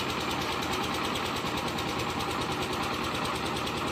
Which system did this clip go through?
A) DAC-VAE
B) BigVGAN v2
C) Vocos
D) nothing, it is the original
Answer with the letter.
D